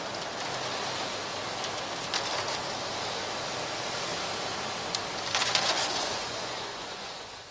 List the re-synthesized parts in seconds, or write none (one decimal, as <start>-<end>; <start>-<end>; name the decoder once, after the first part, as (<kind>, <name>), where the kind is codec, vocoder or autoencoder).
5.4-7.5 (vocoder, Vocos)

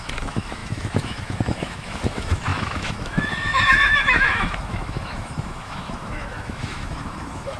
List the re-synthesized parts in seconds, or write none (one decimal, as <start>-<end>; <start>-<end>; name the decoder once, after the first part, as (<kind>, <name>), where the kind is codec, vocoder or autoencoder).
0.0-7.6 (autoencoder, DAC-VAE)

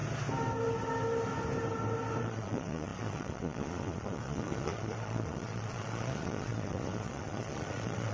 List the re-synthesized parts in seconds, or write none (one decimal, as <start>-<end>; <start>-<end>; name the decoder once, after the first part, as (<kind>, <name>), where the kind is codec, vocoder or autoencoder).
2.2-8.1 (vocoder, Vocos)